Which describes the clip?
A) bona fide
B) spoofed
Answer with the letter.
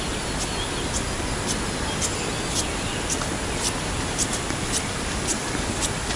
A